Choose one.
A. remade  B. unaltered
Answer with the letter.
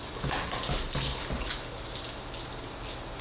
B